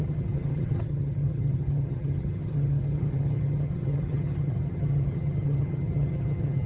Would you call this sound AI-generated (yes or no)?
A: yes